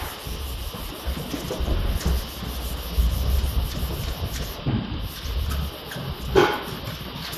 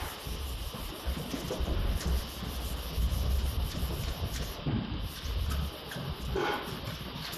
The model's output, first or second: second